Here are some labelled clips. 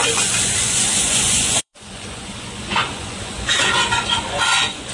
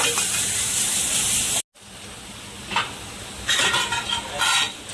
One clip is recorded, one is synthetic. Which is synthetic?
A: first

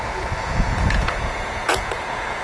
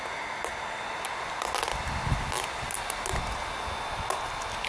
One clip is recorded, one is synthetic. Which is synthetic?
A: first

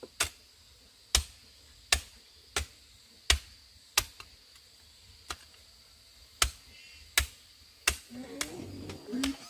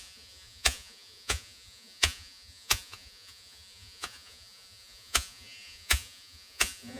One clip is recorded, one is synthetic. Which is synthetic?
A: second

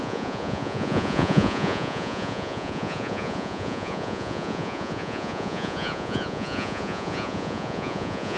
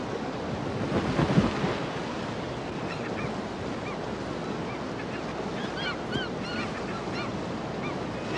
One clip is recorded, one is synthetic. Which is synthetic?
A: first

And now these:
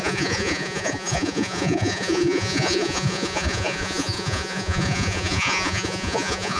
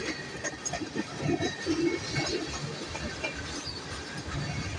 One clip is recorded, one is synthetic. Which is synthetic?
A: first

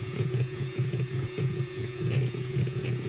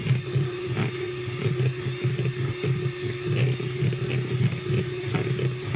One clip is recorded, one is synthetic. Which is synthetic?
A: first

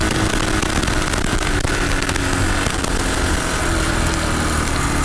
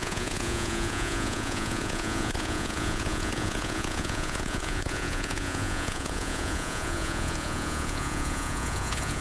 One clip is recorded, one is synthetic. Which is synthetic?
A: second